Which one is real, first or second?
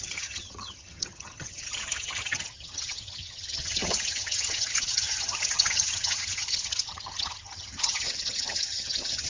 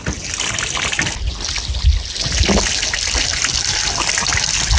second